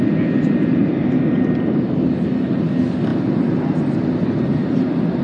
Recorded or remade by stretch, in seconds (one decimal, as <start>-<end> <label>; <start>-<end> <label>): 0.0-4.5 recorded; 4.5-5.2 remade